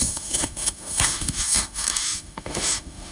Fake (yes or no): yes